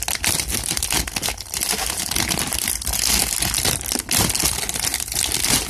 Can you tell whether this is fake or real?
real